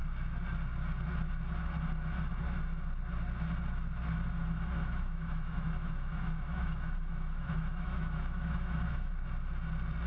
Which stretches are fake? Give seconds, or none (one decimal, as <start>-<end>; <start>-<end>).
4.4-9.1